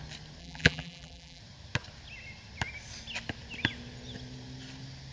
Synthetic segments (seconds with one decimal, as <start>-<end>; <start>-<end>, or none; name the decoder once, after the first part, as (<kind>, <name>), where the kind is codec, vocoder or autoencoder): 0.4-1.4 (vocoder, BigVGAN v2)